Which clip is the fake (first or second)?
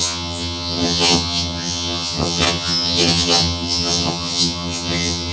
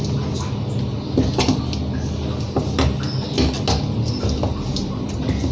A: first